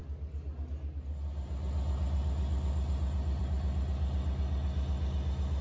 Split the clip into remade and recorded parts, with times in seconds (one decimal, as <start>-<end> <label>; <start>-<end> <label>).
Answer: 0.0-5.6 recorded